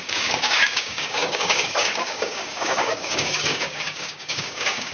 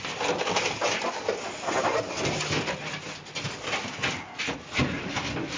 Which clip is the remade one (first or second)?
first